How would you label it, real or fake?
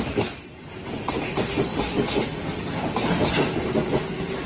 real